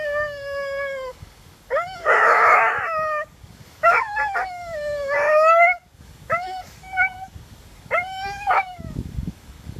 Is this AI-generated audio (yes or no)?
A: yes